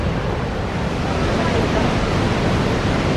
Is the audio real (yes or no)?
yes